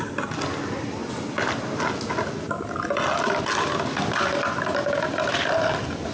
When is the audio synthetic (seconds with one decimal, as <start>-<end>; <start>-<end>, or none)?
none